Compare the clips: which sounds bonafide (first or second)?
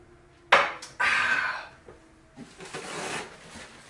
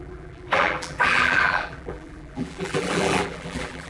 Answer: first